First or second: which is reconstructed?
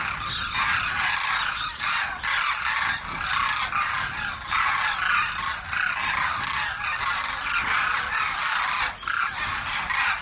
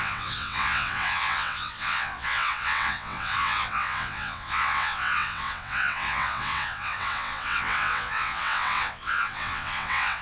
second